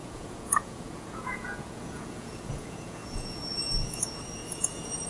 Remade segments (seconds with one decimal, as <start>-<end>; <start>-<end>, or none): 0.0-5.1